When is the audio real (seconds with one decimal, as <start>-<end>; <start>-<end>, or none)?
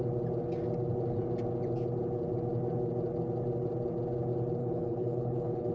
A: 0.0-4.6